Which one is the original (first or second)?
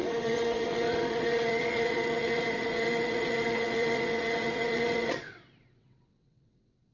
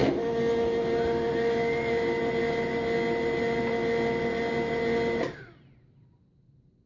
second